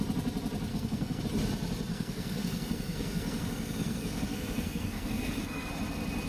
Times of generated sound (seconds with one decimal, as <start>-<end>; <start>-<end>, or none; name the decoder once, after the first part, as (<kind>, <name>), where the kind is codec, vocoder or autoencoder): 0.7-1.2 (codec, SNAC); 1.9-5.7